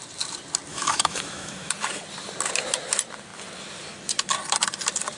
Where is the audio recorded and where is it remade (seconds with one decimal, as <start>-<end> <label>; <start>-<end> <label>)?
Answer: 0.0-0.7 recorded; 0.7-1.7 remade; 1.7-5.2 recorded